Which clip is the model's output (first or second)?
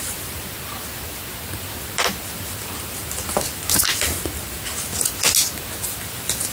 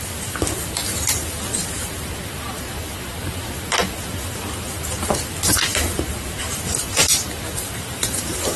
second